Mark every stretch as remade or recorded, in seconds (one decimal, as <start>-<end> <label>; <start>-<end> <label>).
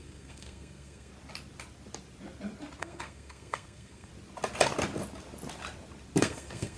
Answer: 0.0-1.1 remade; 1.1-2.8 recorded; 2.8-4.1 remade; 4.1-6.2 recorded; 6.2-6.8 remade